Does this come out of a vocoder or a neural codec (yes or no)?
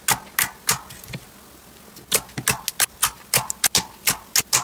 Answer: no